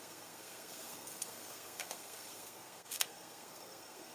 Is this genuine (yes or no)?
no